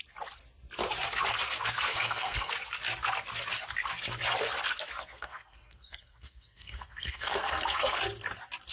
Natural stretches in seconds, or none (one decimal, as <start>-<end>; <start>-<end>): 0.0-1.9; 2.5-5.1; 8.0-8.7